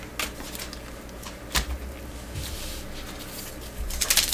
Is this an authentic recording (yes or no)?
yes